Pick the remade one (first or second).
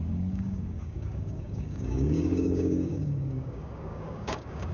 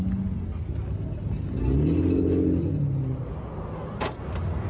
first